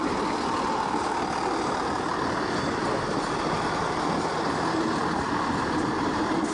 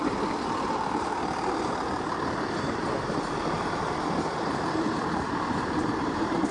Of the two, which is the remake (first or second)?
second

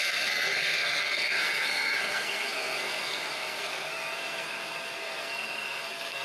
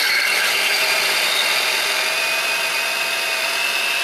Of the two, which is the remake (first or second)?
first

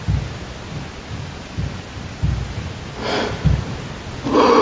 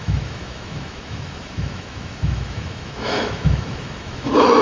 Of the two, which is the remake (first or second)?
second